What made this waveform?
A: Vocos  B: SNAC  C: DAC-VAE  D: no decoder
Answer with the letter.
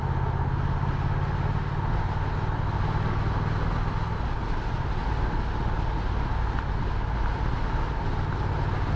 D